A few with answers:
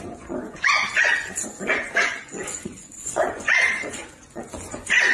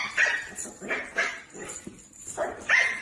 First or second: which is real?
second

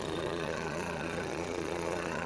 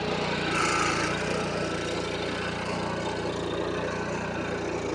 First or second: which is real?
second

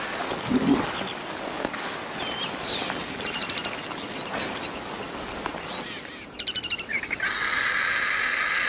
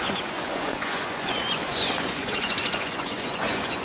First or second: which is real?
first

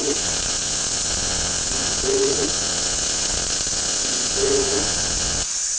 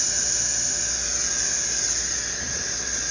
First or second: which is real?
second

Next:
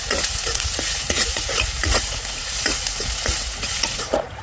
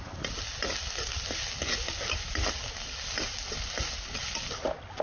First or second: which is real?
second